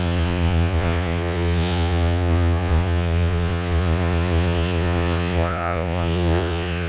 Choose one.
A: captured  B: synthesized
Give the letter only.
B